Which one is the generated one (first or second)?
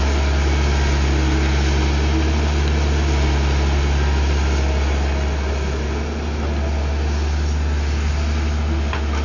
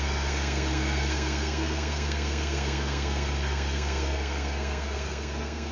second